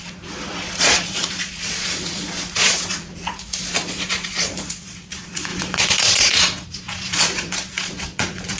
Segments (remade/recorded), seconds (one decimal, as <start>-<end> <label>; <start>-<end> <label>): 0.0-8.6 remade